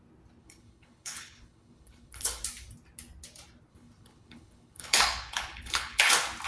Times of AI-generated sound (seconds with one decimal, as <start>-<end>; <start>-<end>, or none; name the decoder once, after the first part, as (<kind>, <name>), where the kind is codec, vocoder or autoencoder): 0.4-2.4 (codec, HILCodec); 3.7-6.1